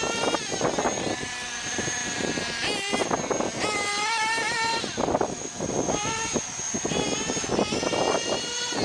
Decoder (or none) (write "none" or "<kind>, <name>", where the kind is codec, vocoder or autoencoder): none